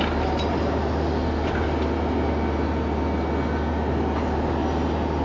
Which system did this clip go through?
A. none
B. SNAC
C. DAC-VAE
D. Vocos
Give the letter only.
A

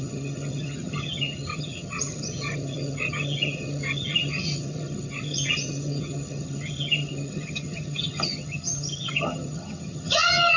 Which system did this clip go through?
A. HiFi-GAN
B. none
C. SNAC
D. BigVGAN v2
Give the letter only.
A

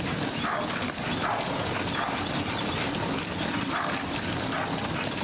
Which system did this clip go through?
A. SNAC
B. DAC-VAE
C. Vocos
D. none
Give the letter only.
D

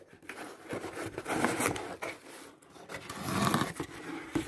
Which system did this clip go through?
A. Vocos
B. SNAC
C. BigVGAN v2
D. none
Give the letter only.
D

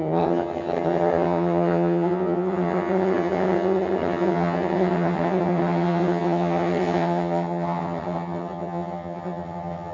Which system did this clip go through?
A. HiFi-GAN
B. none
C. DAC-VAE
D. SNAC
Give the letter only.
A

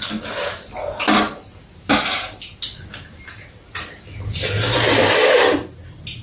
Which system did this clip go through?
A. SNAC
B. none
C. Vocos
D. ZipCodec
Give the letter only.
B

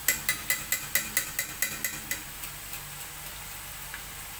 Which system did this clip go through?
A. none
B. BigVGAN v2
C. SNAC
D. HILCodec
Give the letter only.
A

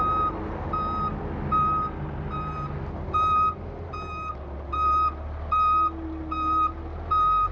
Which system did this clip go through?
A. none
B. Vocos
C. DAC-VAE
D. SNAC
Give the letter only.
A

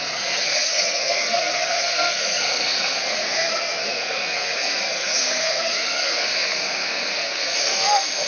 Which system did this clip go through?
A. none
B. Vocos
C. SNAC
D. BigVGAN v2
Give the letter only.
C